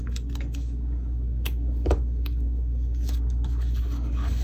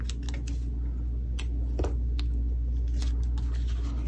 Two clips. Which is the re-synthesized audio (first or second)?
first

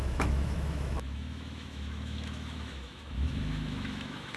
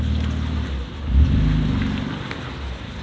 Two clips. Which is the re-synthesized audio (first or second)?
first